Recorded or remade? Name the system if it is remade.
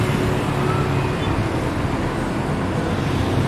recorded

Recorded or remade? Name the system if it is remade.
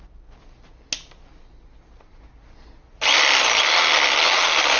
recorded